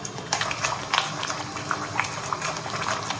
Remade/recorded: recorded